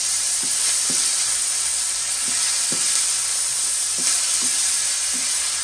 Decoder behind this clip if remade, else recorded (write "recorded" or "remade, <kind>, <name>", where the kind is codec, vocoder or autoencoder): recorded